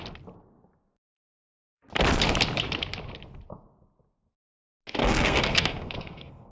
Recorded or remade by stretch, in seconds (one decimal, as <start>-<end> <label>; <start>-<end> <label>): 0.0-5.0 recorded; 5.0-6.5 remade